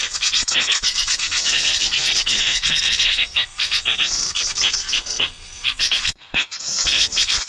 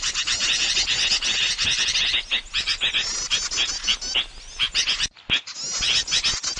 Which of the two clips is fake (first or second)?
first